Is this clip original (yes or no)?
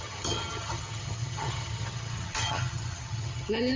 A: no